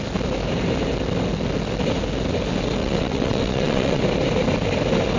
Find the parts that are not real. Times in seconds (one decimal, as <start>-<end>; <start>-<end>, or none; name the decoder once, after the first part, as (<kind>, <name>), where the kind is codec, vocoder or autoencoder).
2.8-4.0 (vocoder, WaveNeXt)